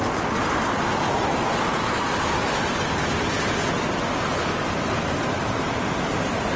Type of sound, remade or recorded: recorded